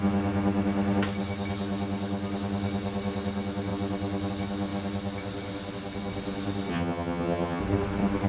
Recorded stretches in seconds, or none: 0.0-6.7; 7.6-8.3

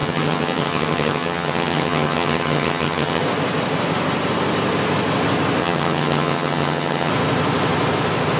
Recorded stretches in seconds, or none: 3.2-5.6; 7.1-8.4

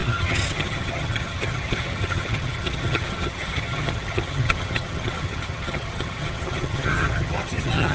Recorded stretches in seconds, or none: none

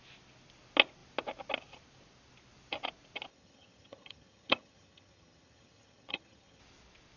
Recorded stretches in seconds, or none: 0.0-3.3; 6.6-7.2

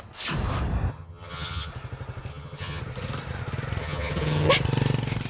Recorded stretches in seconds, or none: 0.0-0.9; 1.7-2.3; 2.8-3.8; 4.5-5.3